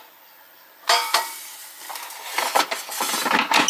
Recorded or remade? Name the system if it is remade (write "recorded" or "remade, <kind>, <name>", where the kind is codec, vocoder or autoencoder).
recorded